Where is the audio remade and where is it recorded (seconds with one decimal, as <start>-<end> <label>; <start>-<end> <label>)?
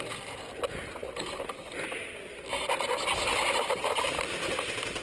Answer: 0.0-5.0 recorded